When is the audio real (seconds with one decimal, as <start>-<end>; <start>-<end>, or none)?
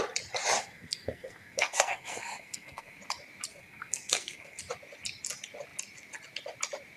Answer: 0.0-0.6; 3.0-3.5; 4.6-7.0